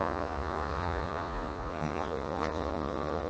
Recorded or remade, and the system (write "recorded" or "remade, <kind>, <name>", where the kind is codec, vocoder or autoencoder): remade, vocoder, Vocos